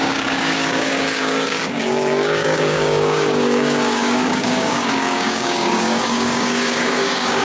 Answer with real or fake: fake